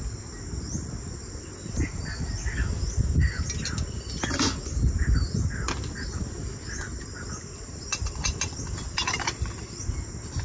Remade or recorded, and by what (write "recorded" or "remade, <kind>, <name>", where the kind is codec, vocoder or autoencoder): recorded